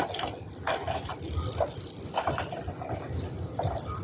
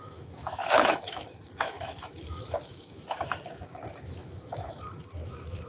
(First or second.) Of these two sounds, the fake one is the second